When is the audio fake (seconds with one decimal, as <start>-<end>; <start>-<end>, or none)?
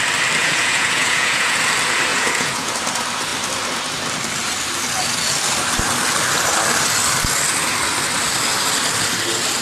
0.4-1.6; 2.1-2.7